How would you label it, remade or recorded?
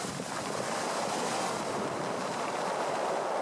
recorded